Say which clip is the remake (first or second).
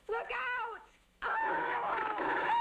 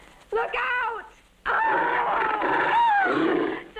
first